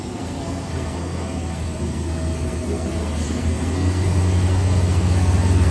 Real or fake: fake